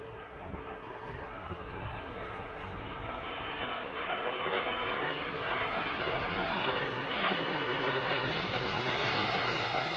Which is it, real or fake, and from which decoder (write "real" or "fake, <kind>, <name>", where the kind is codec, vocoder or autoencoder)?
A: fake, codec, SNAC